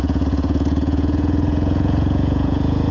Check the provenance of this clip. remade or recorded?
remade